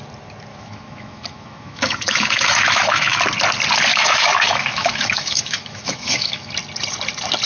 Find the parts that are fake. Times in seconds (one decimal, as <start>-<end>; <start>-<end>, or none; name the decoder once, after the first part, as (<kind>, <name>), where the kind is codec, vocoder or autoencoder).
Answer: 0.5-3.2 (autoencoder, DAC-VAE); 3.9-6.5